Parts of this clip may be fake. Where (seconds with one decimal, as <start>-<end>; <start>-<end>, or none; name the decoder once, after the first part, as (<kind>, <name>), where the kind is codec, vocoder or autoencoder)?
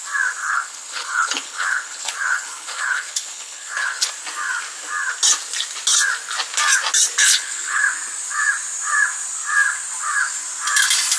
0.4-4.1 (codec, HILCodec); 7.2-7.8